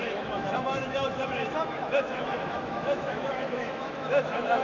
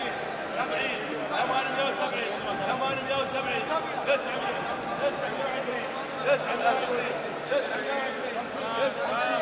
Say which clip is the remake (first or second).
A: first